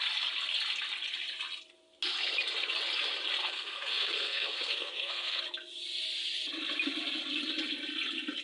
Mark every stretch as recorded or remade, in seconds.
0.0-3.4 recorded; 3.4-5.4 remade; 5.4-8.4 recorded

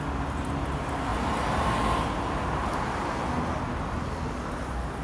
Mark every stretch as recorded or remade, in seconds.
0.0-5.0 recorded

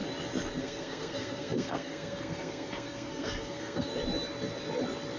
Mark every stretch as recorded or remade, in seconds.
0.0-0.6 recorded; 0.6-3.9 remade; 3.9-5.2 recorded

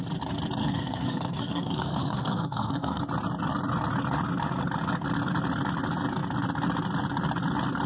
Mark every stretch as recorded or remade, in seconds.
0.0-0.6 recorded; 0.6-3.0 remade; 3.0-7.9 recorded